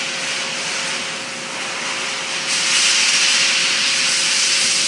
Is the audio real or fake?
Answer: real